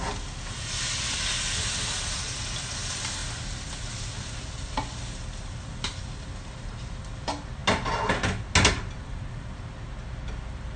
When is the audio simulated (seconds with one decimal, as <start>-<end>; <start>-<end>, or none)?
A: none